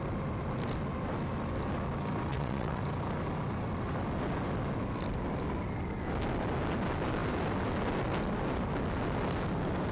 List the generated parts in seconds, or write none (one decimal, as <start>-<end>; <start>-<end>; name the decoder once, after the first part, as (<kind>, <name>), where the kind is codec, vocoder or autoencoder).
2.3-2.8 (vocoder, WaveNeXt)

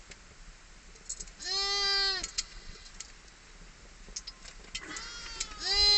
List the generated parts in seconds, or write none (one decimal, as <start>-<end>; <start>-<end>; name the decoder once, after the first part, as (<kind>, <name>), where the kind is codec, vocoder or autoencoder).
2.3-2.9 (vocoder, WaveNeXt)

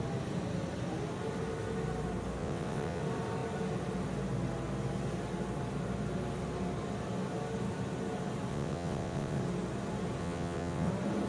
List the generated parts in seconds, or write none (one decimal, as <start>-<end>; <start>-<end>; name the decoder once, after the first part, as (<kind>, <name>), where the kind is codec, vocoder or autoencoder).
2.4-3.0 (vocoder, WaveNeXt); 8.5-9.4; 10.2-10.9

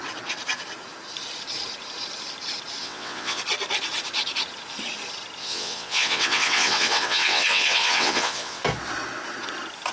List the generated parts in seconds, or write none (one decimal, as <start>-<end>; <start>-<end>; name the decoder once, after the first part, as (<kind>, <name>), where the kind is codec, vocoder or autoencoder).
2.8-3.4 (vocoder, WaveNeXt); 5.4-8.6

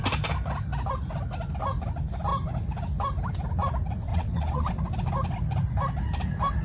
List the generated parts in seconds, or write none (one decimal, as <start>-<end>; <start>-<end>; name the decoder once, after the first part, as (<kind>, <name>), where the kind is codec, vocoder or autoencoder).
4.1-4.7 (vocoder, WaveNeXt)

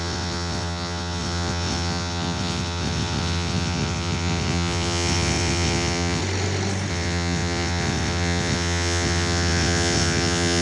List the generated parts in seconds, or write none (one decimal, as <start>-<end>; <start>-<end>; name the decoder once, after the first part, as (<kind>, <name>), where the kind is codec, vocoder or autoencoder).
0.0-6.2 (vocoder, WaveNeXt); 6.9-10.6

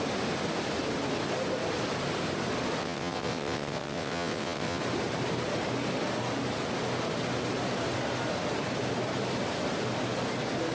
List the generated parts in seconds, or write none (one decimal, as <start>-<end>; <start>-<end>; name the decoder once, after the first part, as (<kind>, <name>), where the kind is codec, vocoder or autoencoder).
2.8-4.8 (vocoder, WaveNeXt)

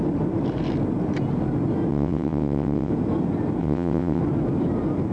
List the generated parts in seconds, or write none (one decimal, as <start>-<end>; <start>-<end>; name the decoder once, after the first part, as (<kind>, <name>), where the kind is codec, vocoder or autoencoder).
1.9-2.9 (vocoder, WaveNeXt); 3.6-4.2